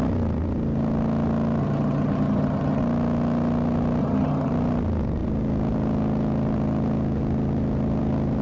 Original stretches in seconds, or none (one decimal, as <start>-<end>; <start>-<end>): 0.0-1.6; 2.8-4.0; 4.5-8.4